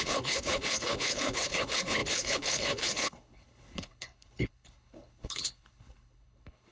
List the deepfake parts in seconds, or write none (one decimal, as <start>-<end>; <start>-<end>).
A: 0.0-6.7